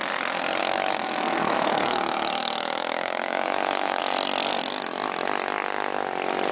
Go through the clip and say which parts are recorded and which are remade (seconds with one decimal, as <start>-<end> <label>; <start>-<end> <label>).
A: 0.0-0.6 recorded; 0.6-4.0 remade; 4.0-6.5 recorded